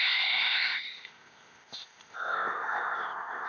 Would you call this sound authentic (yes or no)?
no